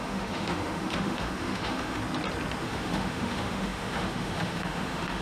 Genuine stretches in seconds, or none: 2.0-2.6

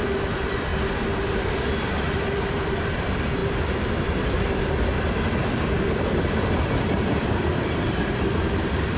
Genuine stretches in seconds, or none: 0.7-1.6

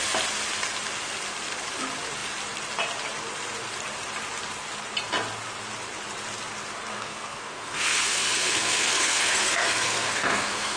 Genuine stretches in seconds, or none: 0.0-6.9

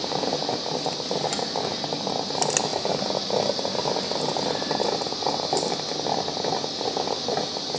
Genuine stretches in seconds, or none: 0.0-7.8